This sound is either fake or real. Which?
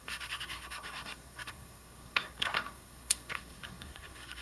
fake